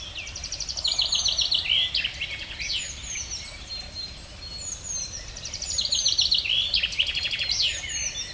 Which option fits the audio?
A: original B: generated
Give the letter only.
A